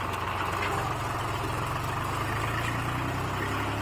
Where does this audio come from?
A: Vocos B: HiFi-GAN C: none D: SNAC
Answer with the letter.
C